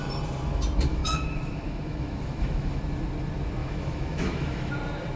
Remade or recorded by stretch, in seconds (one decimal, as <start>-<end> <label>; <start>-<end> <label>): 0.0-0.9 recorded; 0.9-2.8 remade; 2.8-3.6 recorded; 3.6-4.7 remade; 4.7-5.2 recorded